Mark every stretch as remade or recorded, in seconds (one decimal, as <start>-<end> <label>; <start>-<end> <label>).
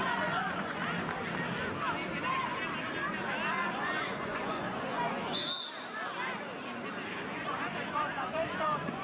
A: 0.0-0.8 remade; 0.8-3.5 recorded; 3.5-5.4 remade; 5.4-7.1 recorded; 7.1-9.0 remade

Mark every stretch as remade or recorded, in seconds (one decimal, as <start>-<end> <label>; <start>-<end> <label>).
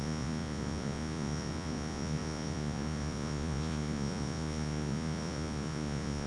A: 0.0-6.3 remade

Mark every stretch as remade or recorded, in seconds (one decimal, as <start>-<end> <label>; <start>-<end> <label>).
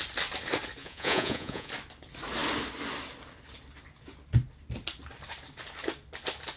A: 0.0-0.8 recorded; 0.8-1.7 remade; 1.7-6.6 recorded